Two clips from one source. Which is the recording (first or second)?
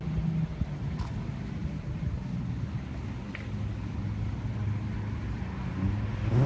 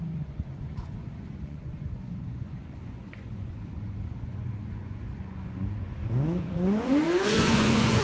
first